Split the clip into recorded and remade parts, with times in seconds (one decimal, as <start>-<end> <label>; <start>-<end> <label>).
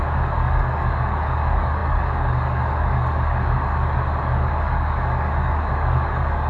0.0-6.5 remade